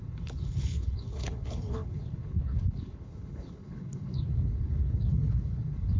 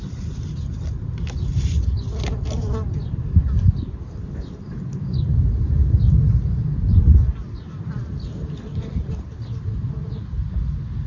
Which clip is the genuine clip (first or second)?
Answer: second